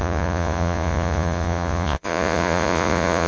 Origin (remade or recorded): remade